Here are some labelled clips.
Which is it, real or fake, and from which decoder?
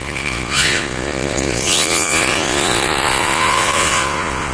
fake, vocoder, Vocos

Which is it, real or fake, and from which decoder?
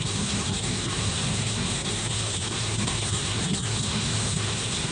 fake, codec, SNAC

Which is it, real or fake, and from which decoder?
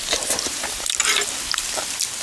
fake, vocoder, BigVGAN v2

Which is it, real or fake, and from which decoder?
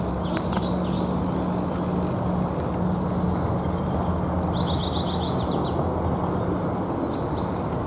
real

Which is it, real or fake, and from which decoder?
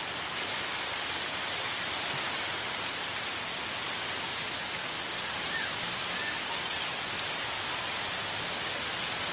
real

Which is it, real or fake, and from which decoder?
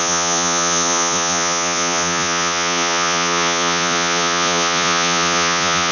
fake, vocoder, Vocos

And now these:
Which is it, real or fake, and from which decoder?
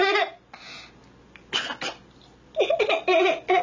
real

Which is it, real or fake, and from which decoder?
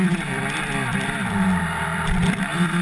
fake, vocoder, BigVGAN v2